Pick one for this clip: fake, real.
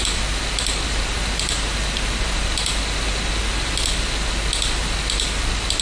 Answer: real